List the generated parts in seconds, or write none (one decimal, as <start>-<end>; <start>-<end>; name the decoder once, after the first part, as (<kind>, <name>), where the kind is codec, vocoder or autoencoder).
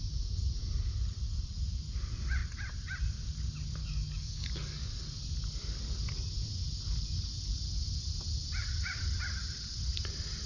3.8-4.9 (codec, DAC)